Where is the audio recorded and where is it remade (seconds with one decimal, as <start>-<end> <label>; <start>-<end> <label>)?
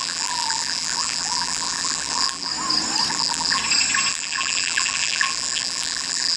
0.0-2.5 remade; 2.5-3.1 recorded; 3.1-3.6 remade; 3.6-4.1 recorded; 4.1-6.4 remade